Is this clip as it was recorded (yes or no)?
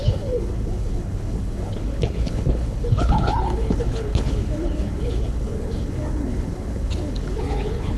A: no